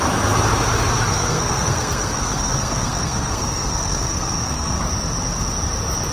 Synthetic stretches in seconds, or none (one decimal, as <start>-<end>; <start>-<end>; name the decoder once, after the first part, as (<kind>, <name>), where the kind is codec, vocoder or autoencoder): 1.1-4.8 (codec, SNAC)